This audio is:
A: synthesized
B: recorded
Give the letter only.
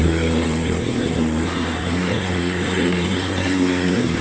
A